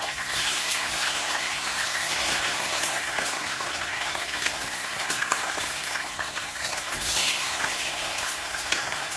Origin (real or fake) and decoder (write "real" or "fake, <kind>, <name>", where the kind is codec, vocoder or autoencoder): fake, codec, SNAC